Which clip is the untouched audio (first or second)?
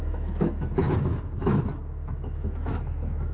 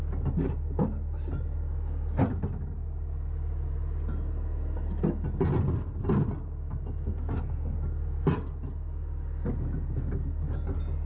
second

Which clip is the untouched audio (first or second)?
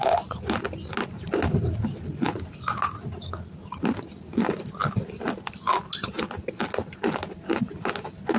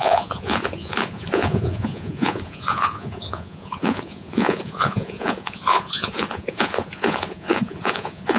first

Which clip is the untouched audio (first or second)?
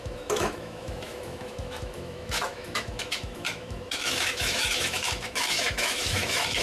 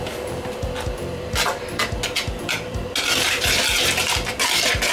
second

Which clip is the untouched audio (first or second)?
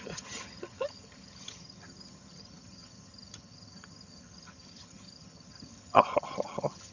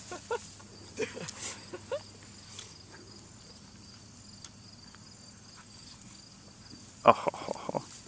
second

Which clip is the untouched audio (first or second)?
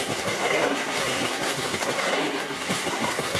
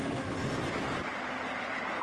second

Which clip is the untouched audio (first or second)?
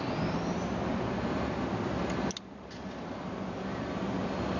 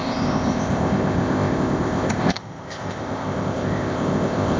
first